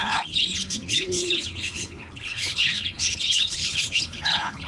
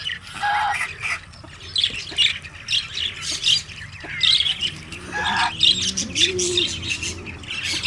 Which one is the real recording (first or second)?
second